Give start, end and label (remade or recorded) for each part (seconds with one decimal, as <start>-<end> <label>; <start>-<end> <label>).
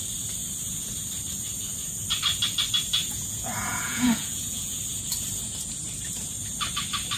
0.0-3.0 recorded; 3.0-4.8 remade; 4.8-7.2 recorded